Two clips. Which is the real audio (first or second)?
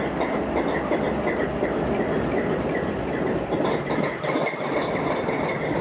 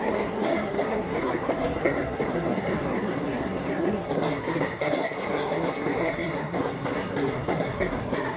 first